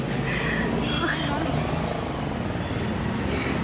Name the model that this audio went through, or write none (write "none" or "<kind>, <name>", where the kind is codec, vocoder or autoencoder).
none